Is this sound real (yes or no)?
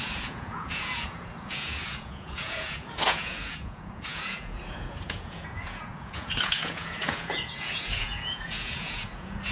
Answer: no